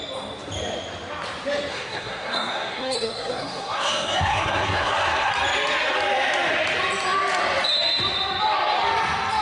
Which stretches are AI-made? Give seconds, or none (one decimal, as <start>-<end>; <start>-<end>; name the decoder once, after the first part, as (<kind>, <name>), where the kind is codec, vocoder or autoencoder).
1.7-5.3 (codec, SNAC)